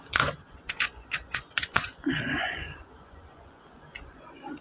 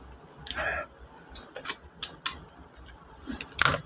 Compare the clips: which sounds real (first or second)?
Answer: second